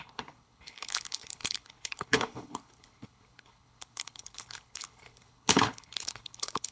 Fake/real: fake